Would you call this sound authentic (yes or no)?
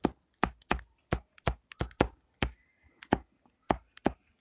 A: yes